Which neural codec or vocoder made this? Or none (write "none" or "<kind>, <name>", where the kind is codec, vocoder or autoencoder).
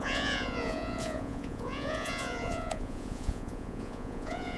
vocoder, Vocos